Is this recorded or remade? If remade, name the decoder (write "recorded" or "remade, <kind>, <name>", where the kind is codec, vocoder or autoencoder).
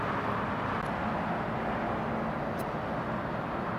recorded